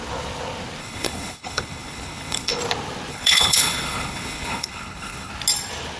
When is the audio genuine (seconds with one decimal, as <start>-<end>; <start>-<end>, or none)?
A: 0.0-0.8; 2.6-3.1; 5.3-6.0